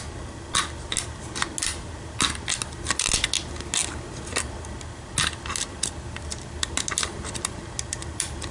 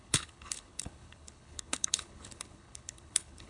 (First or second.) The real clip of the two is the first